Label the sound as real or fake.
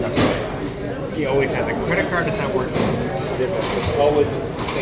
real